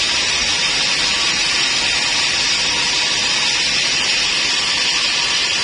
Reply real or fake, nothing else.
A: real